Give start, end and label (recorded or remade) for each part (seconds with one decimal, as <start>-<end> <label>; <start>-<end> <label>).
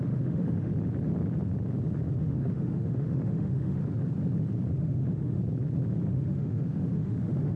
0.0-0.7 remade; 0.7-2.2 recorded; 2.2-3.8 remade; 3.8-4.8 recorded; 4.8-5.4 remade; 5.4-6.1 recorded; 6.1-7.6 remade